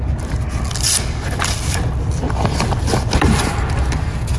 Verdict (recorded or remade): recorded